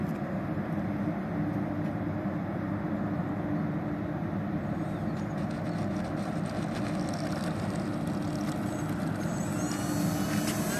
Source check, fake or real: real